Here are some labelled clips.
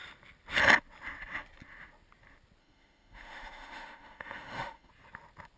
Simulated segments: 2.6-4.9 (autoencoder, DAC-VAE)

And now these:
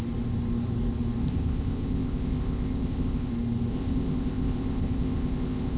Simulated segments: 1.2-3.3 (codec, ZipCodec); 3.7-5.8

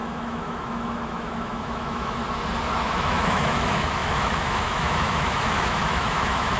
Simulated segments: 0.0-2.2 (autoencoder, DAC-VAE); 2.8-6.6

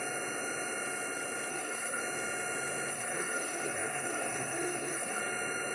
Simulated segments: 1.5-2.0 (codec, SNAC); 2.9-5.2

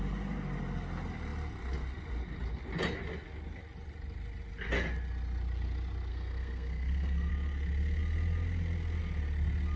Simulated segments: 6.1-7.3 (codec, SNAC)